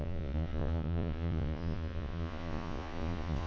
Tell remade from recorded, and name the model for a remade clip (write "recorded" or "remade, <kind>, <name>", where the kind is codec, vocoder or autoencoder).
remade, vocoder, Vocos